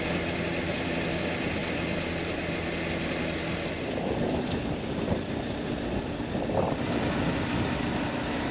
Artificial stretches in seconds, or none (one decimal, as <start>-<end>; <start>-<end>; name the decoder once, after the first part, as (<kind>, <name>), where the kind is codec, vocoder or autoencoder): none